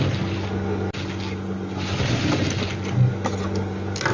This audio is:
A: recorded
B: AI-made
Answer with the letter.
A